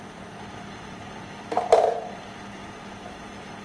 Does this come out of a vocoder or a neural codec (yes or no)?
yes